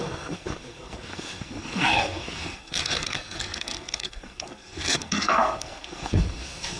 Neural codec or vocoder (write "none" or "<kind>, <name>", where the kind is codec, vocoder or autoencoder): codec, SNAC